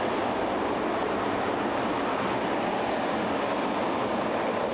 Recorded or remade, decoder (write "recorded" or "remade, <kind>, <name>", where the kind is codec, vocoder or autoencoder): recorded